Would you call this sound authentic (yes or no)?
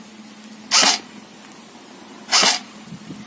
yes